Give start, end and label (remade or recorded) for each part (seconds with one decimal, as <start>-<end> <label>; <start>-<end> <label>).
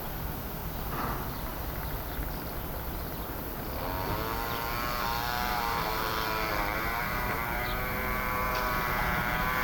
0.0-0.6 remade; 0.6-5.5 recorded; 5.5-6.0 remade; 6.0-6.5 recorded; 6.5-9.6 remade